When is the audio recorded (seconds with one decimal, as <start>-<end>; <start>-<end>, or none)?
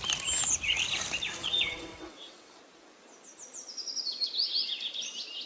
0.0-1.4; 2.6-5.5